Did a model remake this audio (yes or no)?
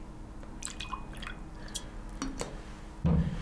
no